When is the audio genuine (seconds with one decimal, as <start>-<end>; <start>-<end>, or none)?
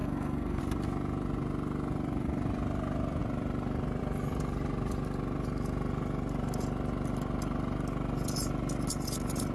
0.6-9.5